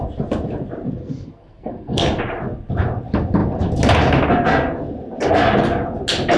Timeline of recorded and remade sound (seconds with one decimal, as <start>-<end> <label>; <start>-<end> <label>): 0.0-1.0 recorded; 1.0-2.2 remade; 2.2-6.4 recorded